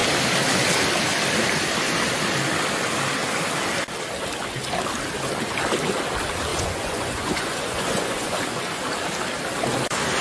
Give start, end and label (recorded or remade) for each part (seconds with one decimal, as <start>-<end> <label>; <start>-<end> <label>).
0.0-6.5 recorded; 6.5-8.8 remade; 8.8-10.2 recorded